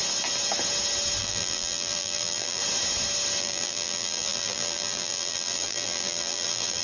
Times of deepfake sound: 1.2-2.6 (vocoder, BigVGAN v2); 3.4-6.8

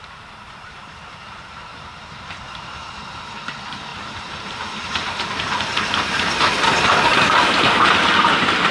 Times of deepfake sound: 0.0-8.7 (vocoder, BigVGAN v2)

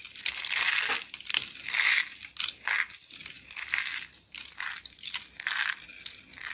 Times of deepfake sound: none

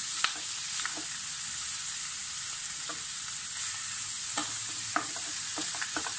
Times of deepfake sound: 4.4-6.2 (vocoder, BigVGAN v2)